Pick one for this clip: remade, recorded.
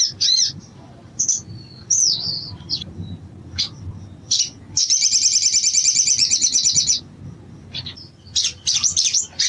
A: remade